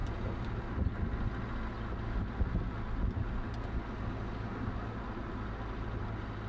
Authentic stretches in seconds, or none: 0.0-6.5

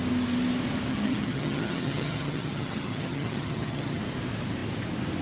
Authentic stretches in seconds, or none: 0.0-0.9; 4.0-5.2

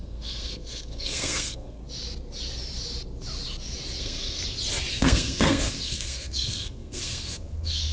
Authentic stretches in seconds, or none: 1.8-4.0; 4.4-4.9

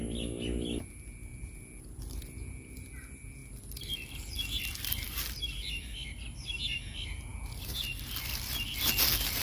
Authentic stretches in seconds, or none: 0.0-9.4

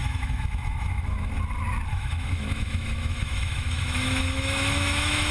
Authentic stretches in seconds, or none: 1.3-1.9

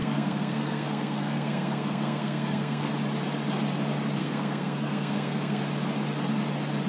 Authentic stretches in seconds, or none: 2.9-4.2; 5.6-6.9

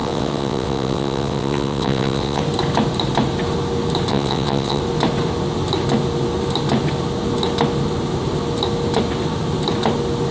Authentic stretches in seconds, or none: 2.4-4.1; 4.8-10.3

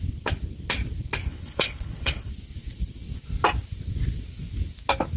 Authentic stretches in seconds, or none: 0.0-1.2; 2.3-5.2